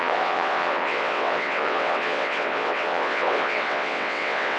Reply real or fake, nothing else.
fake